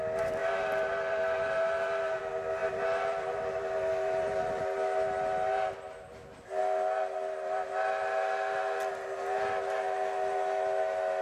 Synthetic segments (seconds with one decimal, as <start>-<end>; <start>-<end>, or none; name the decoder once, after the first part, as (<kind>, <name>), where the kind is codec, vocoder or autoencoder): 0.4-2.2 (vocoder, BigVGAN v2); 2.6-4.6